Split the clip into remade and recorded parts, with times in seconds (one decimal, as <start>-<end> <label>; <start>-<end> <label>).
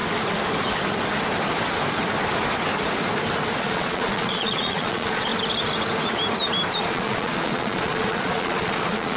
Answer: 0.0-3.6 recorded; 3.6-5.3 remade; 5.3-6.7 recorded; 6.7-9.2 remade